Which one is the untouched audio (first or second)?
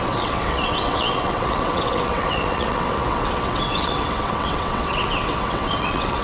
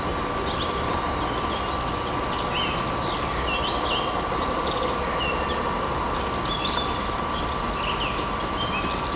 second